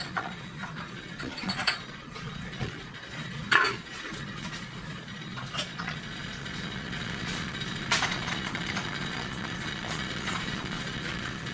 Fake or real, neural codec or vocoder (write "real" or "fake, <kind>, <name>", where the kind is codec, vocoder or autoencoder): fake, vocoder, Vocos